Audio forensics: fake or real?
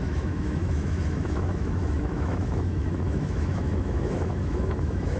fake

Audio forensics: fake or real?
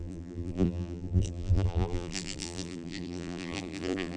fake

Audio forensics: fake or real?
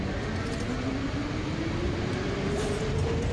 real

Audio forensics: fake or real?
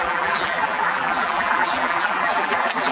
fake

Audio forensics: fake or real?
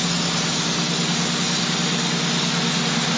real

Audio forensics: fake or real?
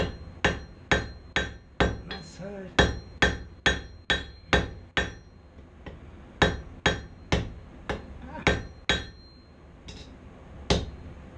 real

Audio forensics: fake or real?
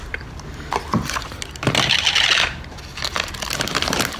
real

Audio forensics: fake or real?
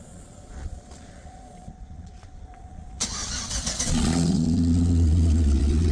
fake